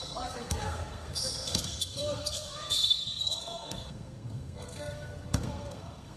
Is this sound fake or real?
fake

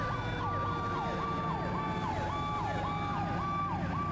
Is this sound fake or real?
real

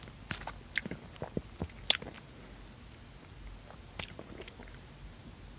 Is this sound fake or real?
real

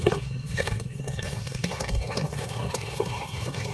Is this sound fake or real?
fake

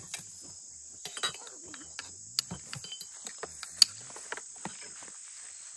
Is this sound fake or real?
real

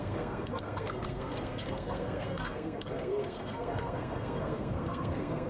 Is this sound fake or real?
fake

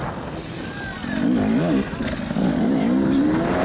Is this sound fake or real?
real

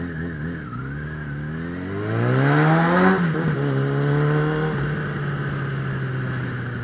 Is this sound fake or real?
real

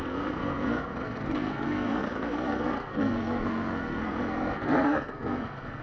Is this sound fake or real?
fake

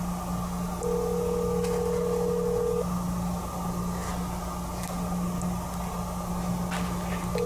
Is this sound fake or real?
real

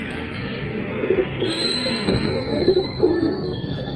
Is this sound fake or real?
fake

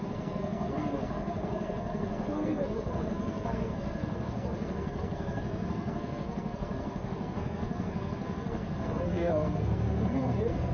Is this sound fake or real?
fake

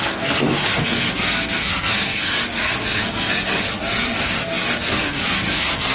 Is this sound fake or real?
fake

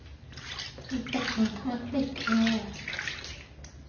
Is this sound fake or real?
real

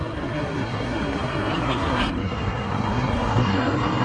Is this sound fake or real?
fake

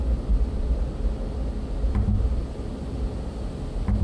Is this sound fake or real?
real